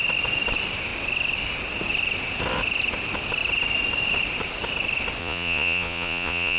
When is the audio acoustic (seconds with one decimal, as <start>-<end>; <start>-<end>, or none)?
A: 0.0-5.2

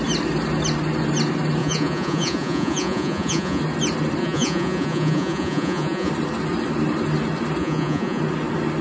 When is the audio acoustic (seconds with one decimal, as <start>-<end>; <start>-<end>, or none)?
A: 0.0-1.6; 3.6-4.2; 6.1-7.6; 8.2-8.8

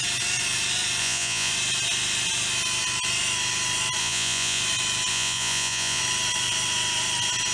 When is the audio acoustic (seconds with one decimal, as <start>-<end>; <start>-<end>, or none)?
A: 0.0-1.0; 1.5-4.0; 4.6-5.1; 6.0-7.5

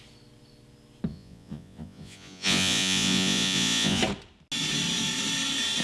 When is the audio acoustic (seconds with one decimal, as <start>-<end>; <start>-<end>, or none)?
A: 0.0-1.1; 4.0-5.8